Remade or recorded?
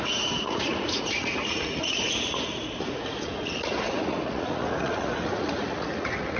remade